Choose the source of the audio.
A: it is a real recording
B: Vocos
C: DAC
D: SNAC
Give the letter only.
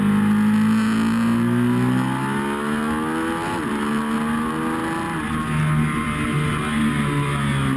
A